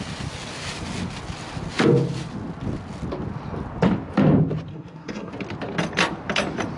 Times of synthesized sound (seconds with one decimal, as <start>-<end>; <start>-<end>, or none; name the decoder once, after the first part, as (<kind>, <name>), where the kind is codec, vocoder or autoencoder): 4.7-5.3 (codec, SNAC)